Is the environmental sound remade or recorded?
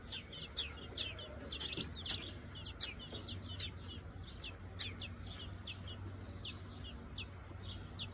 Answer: recorded